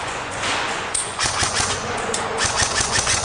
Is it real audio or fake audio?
fake